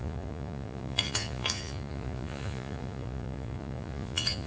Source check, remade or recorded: remade